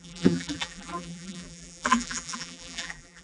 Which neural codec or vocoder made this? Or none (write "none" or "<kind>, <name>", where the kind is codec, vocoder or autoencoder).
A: vocoder, BigVGAN v2